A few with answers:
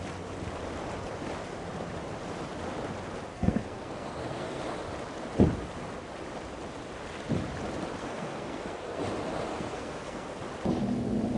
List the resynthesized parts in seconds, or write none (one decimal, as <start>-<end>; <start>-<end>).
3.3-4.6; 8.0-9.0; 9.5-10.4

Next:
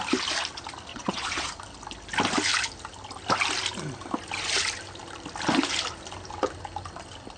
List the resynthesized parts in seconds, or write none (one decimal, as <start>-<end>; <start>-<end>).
0.9-1.5

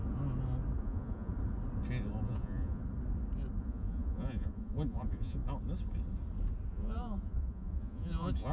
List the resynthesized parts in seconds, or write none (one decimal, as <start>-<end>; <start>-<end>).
0.8-1.3; 2.2-2.8; 3.6-5.4; 6.7-8.5